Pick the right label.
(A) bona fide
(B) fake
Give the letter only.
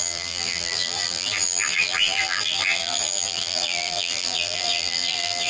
B